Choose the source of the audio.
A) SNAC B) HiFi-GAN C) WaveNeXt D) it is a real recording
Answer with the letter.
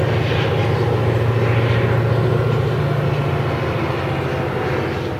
D